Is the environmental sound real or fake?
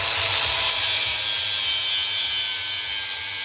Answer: real